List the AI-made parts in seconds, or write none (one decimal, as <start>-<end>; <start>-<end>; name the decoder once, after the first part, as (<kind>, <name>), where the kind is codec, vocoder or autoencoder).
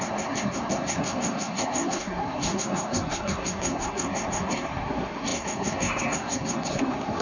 0.0-7.2 (codec, SNAC)